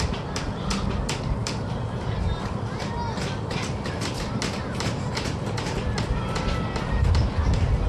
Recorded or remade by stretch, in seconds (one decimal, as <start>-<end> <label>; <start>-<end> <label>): 0.0-7.9 recorded